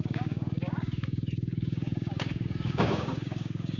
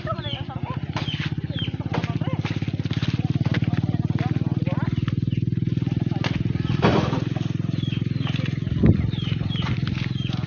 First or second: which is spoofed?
first